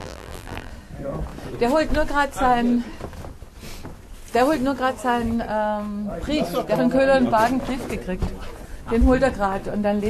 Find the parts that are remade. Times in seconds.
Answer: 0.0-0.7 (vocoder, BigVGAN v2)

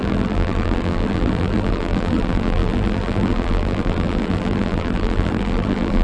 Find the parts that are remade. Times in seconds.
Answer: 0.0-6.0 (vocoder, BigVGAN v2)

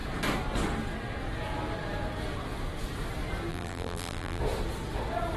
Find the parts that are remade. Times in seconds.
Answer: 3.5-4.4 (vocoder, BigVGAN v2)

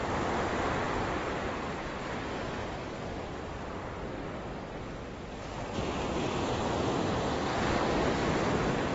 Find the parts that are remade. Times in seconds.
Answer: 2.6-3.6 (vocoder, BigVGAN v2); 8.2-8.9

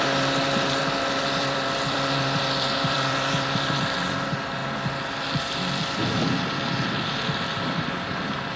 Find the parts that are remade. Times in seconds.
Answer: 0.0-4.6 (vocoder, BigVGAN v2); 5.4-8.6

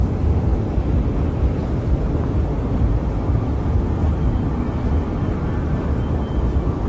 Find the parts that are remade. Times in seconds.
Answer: 2.9-3.6 (vocoder, BigVGAN v2); 4.0-4.5

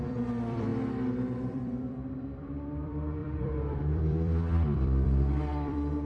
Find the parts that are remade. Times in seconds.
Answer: 0.0-0.7 (vocoder, BigVGAN v2); 1.5-6.1

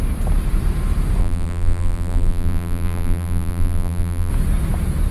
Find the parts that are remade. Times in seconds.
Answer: 1.2-4.3 (vocoder, BigVGAN v2)